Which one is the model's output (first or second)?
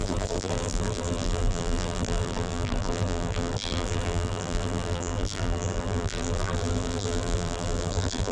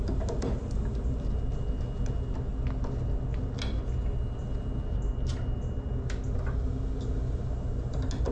first